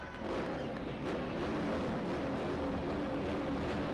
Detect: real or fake real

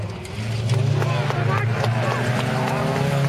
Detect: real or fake real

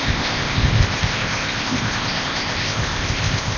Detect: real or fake fake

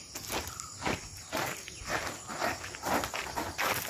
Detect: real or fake real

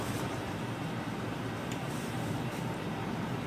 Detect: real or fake fake